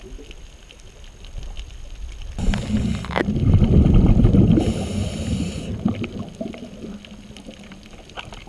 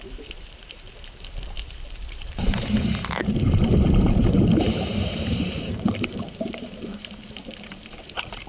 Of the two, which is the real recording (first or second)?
first